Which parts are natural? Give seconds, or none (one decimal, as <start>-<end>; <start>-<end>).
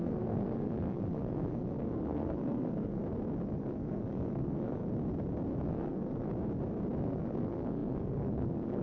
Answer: 3.0-3.6; 4.8-5.6; 6.3-7.0